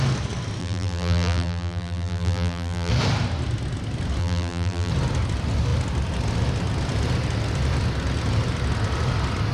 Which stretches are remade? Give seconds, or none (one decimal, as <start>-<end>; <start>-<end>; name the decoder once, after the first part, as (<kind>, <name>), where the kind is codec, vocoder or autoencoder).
0.6-2.9 (vocoder, BigVGAN v2); 4.2-4.9